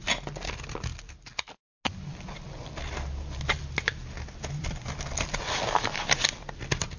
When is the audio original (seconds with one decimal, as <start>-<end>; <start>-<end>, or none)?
0.0-7.0